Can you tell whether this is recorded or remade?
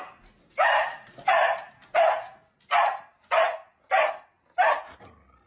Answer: recorded